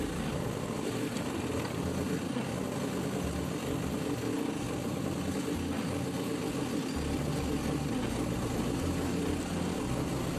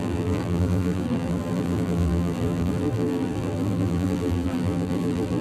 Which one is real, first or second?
first